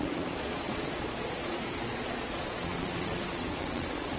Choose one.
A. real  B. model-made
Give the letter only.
B